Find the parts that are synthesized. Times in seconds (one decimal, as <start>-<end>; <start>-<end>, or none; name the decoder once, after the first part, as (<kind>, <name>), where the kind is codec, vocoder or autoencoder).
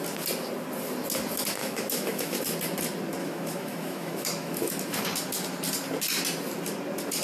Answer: 1.6-2.4 (autoencoder, DAC-VAE); 3.2-4.7